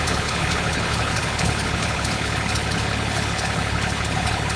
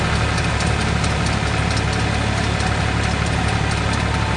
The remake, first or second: first